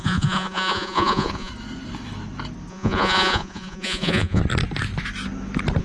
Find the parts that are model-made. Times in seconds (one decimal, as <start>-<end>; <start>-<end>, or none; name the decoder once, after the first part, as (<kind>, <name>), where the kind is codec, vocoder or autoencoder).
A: 0.0-1.5 (vocoder, Vocos); 2.7-4.4